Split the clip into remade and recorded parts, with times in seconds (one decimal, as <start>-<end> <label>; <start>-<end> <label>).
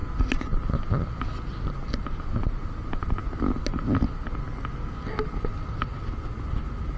0.0-7.0 recorded